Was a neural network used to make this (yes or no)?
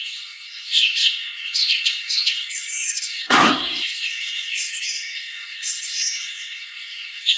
yes